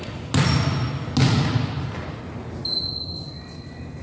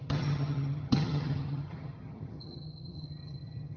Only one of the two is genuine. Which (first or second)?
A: first